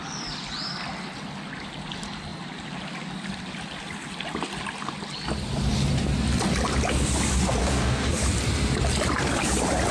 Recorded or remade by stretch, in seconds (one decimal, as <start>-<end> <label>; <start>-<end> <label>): 0.0-7.6 recorded; 7.6-8.1 remade; 8.1-9.9 recorded